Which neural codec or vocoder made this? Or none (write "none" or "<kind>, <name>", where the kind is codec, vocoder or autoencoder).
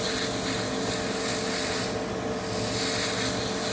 none